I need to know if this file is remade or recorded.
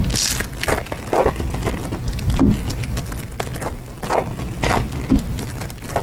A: recorded